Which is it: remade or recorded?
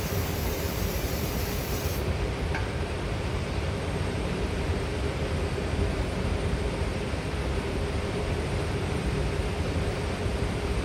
remade